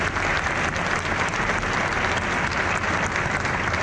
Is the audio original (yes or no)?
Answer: yes